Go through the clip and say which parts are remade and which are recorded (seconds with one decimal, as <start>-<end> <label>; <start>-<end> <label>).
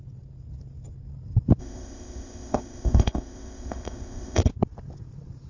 0.0-1.6 recorded; 1.6-4.4 remade; 4.4-5.5 recorded